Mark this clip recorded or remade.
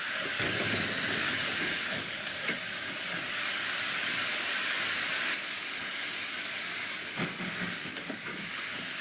remade